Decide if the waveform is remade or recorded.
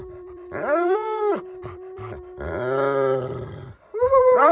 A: remade